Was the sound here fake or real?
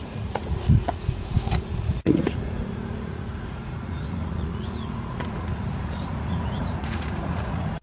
fake